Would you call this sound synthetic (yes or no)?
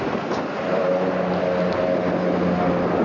no